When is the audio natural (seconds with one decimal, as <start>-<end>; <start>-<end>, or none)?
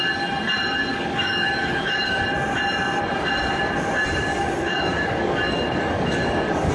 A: 0.0-0.9; 2.2-4.3